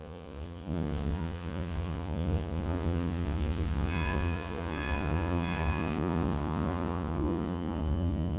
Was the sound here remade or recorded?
remade